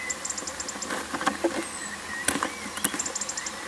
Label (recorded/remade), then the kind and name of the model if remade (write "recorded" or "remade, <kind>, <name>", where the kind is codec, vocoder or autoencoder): recorded